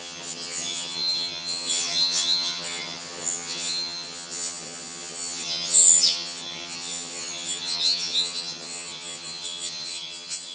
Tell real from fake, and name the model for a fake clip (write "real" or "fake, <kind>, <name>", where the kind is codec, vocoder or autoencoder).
fake, vocoder, HiFi-GAN